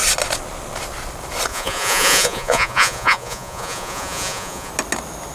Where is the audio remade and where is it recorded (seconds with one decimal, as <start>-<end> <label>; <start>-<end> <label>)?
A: 0.0-1.5 recorded; 1.5-4.7 remade; 4.7-5.3 recorded